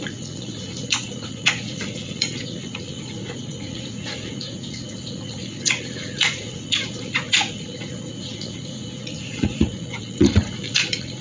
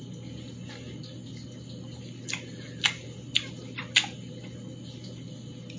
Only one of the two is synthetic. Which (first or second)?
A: first